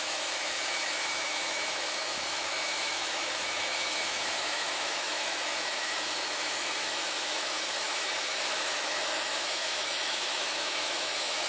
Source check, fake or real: fake